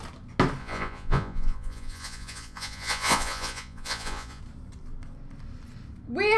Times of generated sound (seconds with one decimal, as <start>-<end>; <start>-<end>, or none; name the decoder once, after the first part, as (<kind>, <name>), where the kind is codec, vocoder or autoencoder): 0.6-4.4 (vocoder, Vocos)